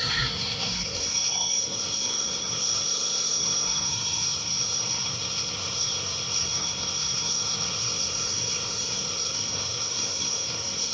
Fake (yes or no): yes